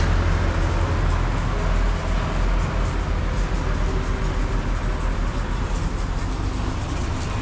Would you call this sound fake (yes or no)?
no